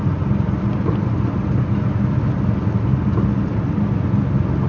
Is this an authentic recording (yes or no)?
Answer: yes